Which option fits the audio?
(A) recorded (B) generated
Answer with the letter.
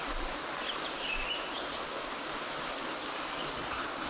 A